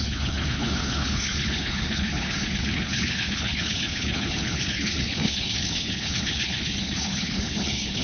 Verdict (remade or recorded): remade